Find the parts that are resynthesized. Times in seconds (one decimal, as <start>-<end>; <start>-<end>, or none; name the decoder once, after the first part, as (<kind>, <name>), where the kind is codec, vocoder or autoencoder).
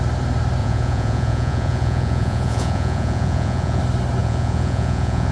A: 0.6-3.8 (vocoder, Vocos); 4.2-5.3